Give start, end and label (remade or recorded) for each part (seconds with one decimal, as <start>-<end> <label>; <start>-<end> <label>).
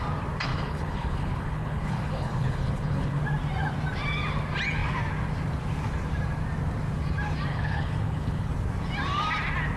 0.0-0.5 recorded; 0.5-3.2 remade; 3.2-7.5 recorded; 7.5-8.5 remade; 8.5-9.8 recorded